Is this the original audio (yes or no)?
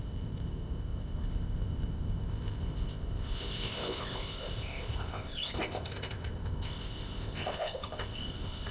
no